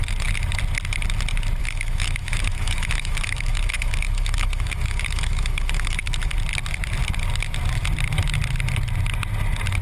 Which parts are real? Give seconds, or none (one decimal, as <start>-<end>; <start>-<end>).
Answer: 0.0-1.6; 6.3-9.8